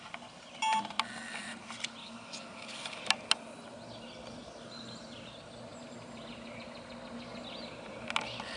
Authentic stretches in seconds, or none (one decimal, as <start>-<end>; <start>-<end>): 0.0-2.0; 3.0-8.6